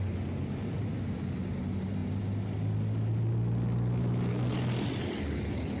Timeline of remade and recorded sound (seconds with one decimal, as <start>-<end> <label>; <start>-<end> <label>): 0.0-5.8 recorded